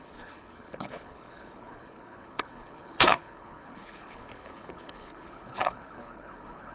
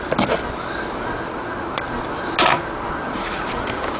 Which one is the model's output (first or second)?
first